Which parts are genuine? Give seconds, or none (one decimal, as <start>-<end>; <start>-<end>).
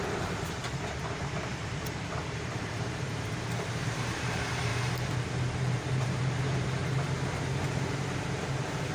6.8-7.6